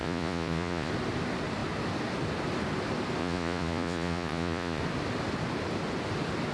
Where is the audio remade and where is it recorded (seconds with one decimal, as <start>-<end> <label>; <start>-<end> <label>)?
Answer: 0.0-0.9 remade; 0.9-3.2 recorded; 3.2-4.8 remade; 4.8-6.5 recorded